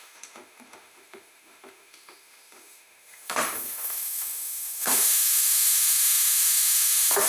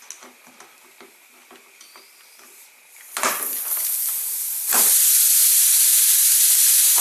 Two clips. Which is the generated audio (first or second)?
first